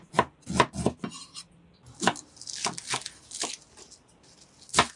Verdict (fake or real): real